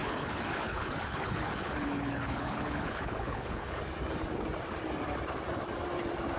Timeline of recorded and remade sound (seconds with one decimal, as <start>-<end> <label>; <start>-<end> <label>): 0.0-3.8 remade; 3.8-6.4 recorded